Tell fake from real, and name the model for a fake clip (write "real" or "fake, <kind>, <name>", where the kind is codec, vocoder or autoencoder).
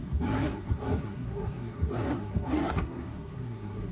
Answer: fake, codec, SNAC